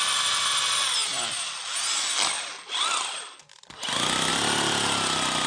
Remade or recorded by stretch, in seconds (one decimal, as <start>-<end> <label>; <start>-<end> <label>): 0.0-5.5 recorded